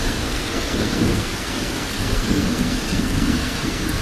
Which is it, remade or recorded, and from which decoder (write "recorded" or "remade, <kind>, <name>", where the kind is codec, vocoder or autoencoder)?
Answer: remade, codec, SNAC